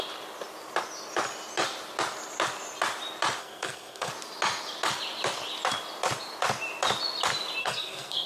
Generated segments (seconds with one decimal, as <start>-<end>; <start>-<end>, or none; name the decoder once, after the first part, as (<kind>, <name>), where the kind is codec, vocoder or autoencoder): 3.4-4.1 (codec, SNAC); 7.6-8.3